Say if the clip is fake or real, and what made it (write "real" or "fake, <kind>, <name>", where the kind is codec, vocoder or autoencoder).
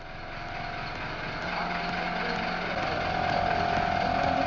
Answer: real